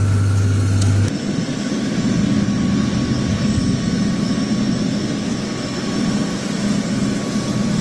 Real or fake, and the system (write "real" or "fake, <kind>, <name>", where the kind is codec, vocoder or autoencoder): real